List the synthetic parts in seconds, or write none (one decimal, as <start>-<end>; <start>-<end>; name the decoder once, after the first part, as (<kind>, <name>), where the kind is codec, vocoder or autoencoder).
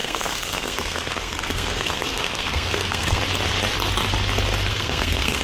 0.0-3.2 (codec, SNAC); 4.7-5.4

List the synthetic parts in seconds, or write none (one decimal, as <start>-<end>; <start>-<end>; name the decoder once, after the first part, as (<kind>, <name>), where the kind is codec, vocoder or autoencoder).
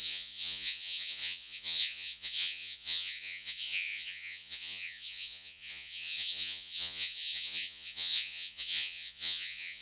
0.0-9.8 (vocoder, Vocos)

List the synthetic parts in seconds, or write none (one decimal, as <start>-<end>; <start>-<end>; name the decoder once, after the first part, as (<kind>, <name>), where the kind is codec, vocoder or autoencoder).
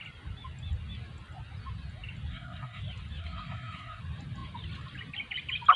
2.3-2.8 (codec, SNAC); 3.2-4.0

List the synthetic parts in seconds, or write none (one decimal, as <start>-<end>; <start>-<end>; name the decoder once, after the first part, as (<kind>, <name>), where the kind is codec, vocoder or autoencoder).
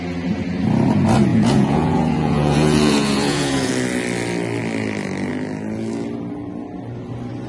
1.3-3.7 (vocoder, Vocos)